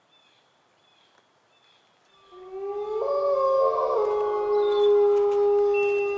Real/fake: real